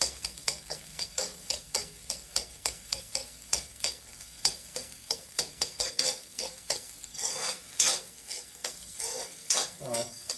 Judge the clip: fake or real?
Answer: fake